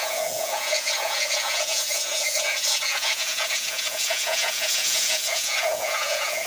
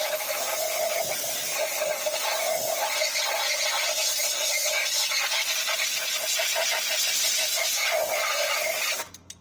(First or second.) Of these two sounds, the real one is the second